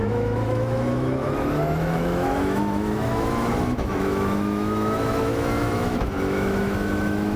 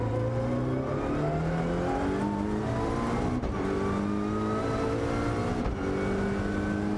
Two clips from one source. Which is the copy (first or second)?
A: first